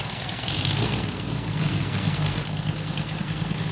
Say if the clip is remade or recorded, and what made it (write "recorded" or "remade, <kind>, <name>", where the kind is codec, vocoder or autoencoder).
remade, codec, SNAC